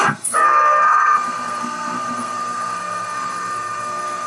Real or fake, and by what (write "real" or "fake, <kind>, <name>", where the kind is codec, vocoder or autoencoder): fake, codec, SNAC